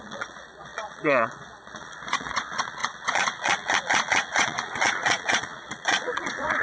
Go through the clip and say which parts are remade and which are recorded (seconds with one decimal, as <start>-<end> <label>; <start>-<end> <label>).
0.0-6.6 remade